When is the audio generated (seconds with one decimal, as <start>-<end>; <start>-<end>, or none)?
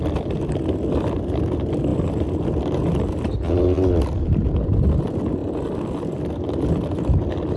0.0-1.9; 4.9-5.4